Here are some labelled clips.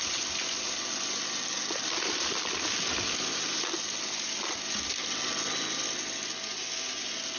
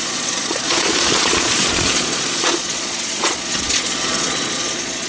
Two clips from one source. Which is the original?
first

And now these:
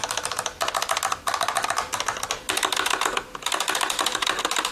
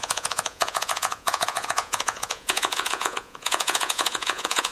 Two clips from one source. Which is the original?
first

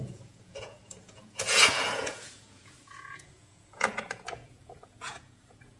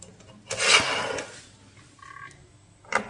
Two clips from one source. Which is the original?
second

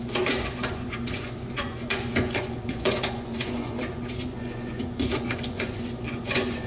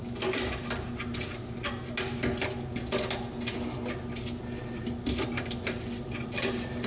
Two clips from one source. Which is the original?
second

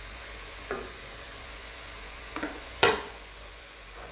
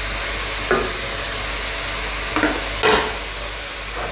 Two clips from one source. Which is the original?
second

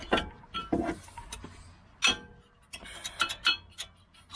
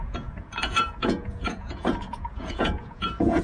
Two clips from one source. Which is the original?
first